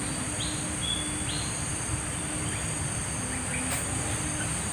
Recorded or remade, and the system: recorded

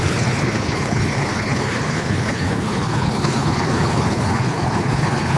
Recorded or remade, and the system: remade, codec, HILCodec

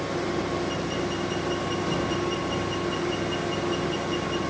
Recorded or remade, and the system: recorded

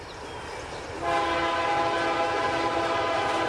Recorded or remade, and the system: recorded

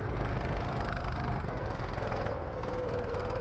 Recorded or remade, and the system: remade, codec, SNAC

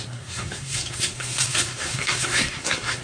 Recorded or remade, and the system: remade, codec, SNAC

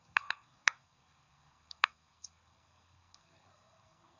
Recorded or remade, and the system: remade, codec, SNAC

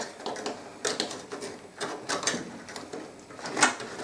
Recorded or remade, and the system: recorded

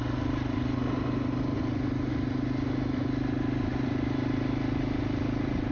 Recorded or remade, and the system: recorded